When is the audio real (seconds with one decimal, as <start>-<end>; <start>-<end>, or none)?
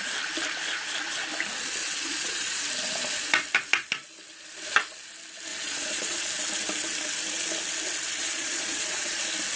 0.0-1.8; 2.6-5.5; 6.3-8.2; 9.2-9.6